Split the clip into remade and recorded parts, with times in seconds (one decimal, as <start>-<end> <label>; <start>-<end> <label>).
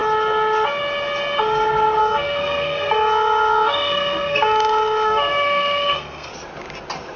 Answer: 0.0-2.0 recorded; 2.0-6.3 remade; 6.3-7.2 recorded